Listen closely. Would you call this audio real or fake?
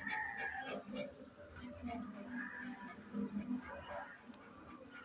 real